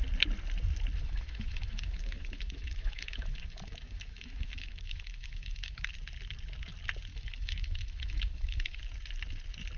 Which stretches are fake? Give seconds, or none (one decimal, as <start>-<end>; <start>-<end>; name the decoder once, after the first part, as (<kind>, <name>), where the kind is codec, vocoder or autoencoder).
1.0-5.9 (autoencoder, DAC-VAE); 7.1-8.8